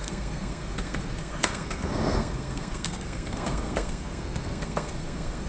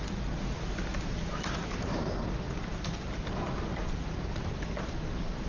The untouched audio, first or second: second